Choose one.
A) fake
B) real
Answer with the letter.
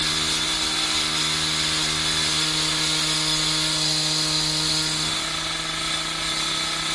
B